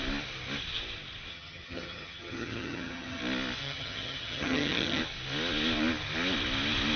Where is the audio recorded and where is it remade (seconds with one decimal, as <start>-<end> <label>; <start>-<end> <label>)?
0.0-1.3 recorded; 1.3-3.2 remade; 3.2-3.6 recorded; 3.6-5.0 remade; 5.0-7.0 recorded